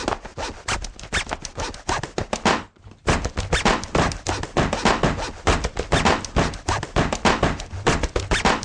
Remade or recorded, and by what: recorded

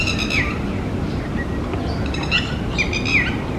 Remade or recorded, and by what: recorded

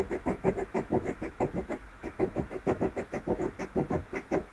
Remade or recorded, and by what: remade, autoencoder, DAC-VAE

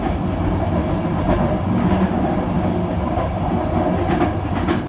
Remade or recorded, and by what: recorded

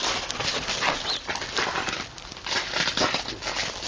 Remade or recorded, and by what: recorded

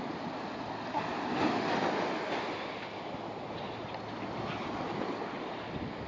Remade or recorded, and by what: recorded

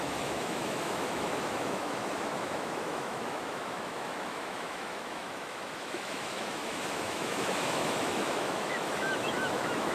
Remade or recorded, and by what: remade, autoencoder, DAC-VAE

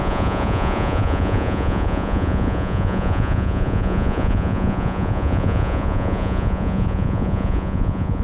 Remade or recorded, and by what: remade, vocoder, Vocos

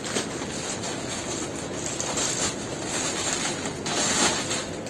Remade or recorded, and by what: recorded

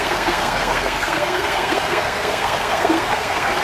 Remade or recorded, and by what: remade, codec, SNAC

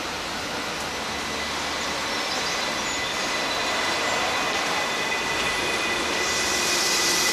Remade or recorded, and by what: recorded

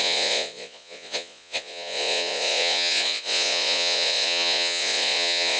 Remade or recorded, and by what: remade, vocoder, Vocos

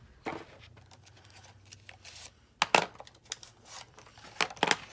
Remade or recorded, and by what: recorded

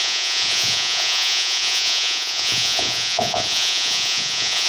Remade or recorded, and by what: remade, vocoder, Vocos